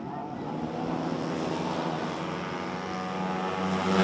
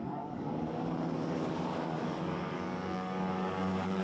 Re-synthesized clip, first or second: second